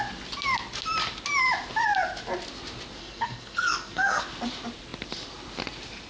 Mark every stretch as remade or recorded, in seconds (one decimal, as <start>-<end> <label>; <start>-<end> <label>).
0.0-3.0 recorded; 3.0-4.2 remade; 4.2-6.1 recorded